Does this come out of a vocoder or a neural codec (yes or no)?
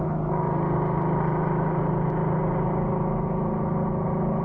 no